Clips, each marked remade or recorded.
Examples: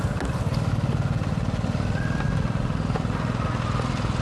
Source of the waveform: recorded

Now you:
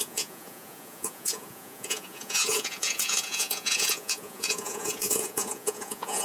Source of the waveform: remade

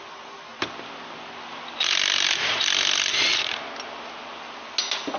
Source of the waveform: recorded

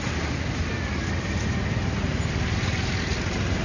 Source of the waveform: recorded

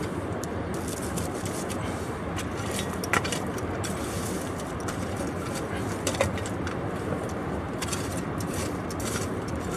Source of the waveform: remade